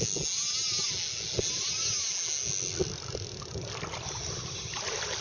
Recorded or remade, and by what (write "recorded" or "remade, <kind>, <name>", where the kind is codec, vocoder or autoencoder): recorded